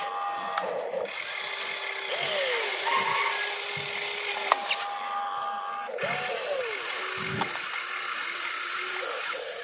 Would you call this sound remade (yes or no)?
no